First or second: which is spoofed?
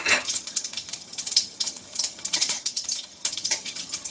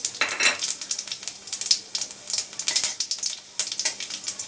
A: first